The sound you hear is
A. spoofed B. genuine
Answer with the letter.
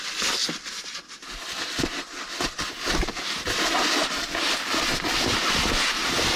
B